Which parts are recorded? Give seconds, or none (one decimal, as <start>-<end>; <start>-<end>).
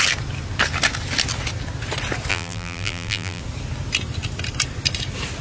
0.0-2.3; 3.4-5.4